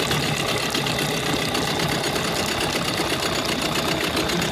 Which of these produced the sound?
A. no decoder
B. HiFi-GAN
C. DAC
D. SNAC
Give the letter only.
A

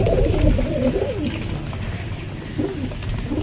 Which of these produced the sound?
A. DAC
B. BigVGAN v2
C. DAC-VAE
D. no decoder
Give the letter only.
D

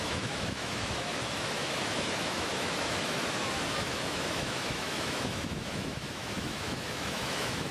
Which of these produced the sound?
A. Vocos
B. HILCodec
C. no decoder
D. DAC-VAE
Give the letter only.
D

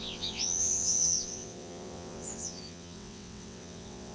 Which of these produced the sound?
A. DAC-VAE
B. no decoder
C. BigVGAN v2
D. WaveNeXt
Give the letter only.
D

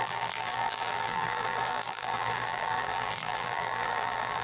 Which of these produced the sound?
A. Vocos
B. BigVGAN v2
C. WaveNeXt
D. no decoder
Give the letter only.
B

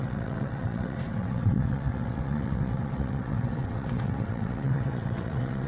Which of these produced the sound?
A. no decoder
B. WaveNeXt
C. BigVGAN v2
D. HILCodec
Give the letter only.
B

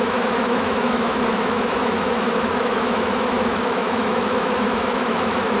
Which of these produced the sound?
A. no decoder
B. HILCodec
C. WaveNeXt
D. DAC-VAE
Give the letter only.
D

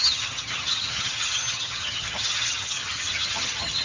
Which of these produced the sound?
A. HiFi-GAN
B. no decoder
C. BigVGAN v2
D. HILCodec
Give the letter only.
A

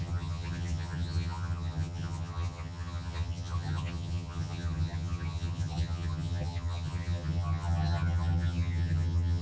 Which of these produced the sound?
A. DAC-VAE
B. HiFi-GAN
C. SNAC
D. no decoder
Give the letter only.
B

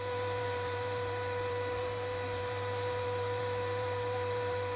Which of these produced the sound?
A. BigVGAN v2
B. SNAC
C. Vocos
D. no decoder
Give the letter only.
A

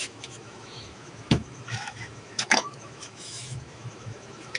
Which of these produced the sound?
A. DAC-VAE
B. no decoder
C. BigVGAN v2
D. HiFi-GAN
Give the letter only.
A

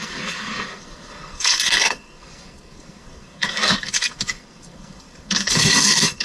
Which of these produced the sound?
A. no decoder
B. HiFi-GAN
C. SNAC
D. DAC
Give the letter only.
C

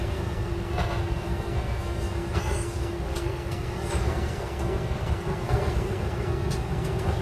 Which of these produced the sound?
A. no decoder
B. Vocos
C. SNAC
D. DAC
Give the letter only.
C